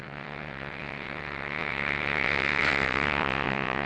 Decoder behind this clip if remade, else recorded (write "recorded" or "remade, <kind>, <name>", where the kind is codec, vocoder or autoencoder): remade, vocoder, WaveNeXt